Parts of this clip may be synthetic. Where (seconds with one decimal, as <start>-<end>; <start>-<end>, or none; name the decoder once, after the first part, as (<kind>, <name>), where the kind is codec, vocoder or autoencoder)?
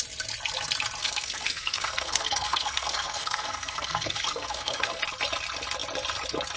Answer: 1.0-5.0 (codec, SNAC)